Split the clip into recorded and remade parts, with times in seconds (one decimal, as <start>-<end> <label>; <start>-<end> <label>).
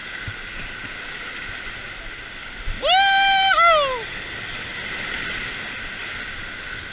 0.0-6.9 recorded